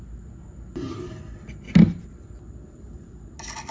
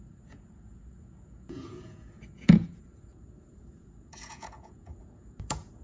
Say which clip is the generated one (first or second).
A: second